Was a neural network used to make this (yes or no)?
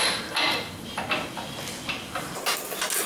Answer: no